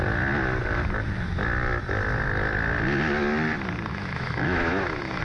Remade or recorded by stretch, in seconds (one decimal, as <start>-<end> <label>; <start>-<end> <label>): 0.0-3.9 recorded; 3.9-5.2 remade

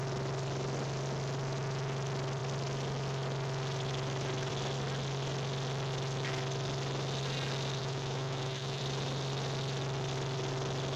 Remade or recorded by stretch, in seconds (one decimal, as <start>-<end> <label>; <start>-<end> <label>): 0.0-7.8 recorded; 7.8-8.8 remade; 8.8-11.0 recorded

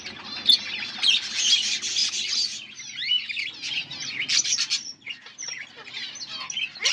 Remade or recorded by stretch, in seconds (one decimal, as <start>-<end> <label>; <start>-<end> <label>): 0.0-6.9 recorded

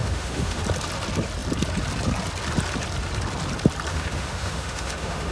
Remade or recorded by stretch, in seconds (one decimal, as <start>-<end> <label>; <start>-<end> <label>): 0.0-0.6 remade; 0.6-3.9 recorded; 3.9-5.3 remade

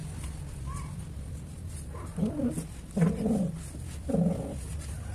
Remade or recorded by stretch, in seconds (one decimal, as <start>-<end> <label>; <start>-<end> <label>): 0.0-5.1 recorded

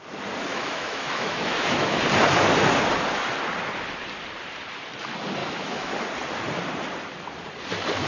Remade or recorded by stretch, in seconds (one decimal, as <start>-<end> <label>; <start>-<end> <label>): 0.0-0.5 recorded; 0.5-2.0 remade; 2.0-5.4 recorded; 5.4-5.9 remade; 5.9-8.1 recorded

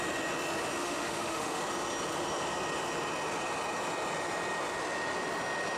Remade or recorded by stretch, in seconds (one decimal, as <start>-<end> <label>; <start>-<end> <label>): 0.0-0.8 recorded; 0.8-1.6 remade; 1.6-5.8 recorded